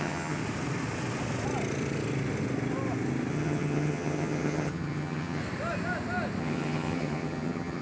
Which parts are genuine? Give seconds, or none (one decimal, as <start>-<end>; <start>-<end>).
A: 0.4-3.3; 5.4-6.4